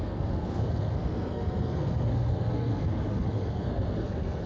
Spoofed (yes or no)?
yes